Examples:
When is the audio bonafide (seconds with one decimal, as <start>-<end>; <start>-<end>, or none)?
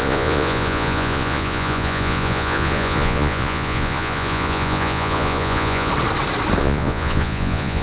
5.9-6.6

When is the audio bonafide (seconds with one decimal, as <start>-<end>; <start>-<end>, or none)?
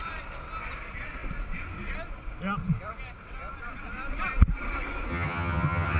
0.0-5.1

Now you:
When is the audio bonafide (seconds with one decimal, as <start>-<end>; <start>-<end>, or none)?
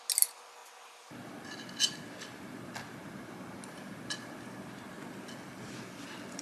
0.0-6.4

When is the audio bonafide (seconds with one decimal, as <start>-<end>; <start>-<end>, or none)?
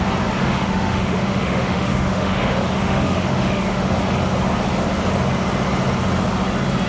0.0-0.4; 3.9-6.9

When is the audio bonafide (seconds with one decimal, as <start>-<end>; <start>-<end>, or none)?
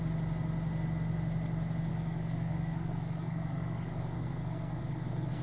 0.0-1.9